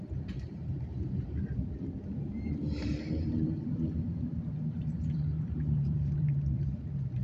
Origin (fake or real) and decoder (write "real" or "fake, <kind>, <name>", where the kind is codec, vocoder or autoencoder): fake, vocoder, BigVGAN v2